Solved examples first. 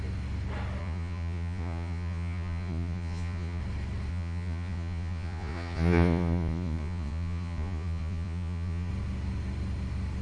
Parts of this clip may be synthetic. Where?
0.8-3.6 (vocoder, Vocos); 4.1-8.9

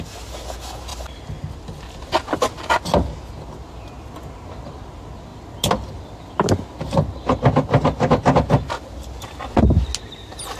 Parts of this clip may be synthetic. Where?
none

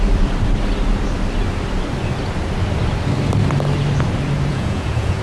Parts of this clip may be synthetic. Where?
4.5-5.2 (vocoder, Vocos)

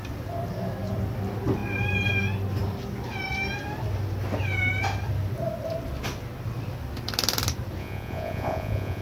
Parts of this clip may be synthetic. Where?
7.8-9.0 (vocoder, Vocos)

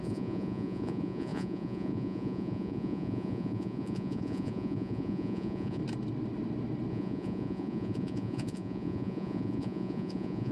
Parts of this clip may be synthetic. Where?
0.0-5.8 (vocoder, Vocos); 6.9-10.5